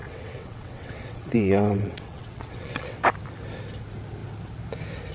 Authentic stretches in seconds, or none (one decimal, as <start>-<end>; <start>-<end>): 3.0-5.1